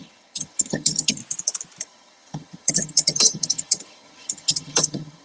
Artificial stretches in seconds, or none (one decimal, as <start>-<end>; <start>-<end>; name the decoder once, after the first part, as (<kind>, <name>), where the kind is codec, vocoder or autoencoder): 0.0-1.2 (vocoder, HiFi-GAN); 1.8-5.2